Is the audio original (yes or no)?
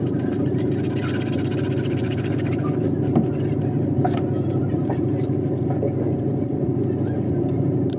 no